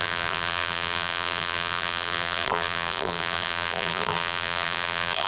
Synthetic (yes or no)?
yes